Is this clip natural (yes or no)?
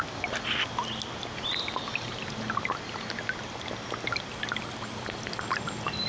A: yes